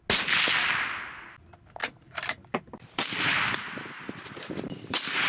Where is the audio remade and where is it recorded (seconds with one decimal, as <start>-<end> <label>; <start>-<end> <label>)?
0.0-1.8 recorded; 1.8-5.3 remade